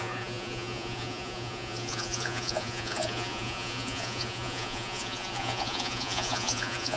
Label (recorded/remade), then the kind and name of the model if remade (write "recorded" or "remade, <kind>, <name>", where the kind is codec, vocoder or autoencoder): remade, vocoder, Vocos